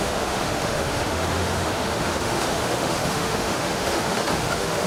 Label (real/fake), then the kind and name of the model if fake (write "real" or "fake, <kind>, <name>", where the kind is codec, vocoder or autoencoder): fake, autoencoder, DAC-VAE